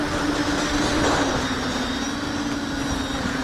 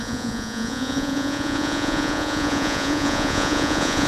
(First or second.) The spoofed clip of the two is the second